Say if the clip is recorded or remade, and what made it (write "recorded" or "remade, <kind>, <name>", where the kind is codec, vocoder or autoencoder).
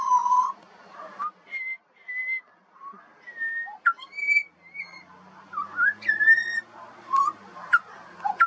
recorded